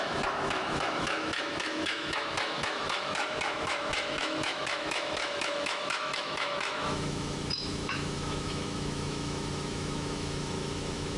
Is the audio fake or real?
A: fake